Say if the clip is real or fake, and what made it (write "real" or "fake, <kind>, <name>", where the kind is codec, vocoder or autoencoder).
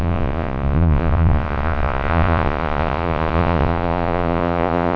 fake, vocoder, Vocos